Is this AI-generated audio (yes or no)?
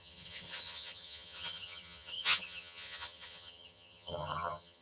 yes